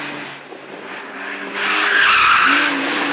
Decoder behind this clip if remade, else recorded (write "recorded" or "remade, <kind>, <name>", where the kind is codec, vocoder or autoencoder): recorded